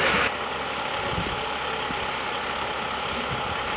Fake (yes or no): no